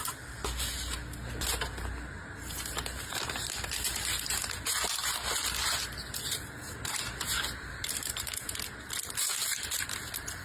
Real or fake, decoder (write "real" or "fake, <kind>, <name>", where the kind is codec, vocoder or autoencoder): real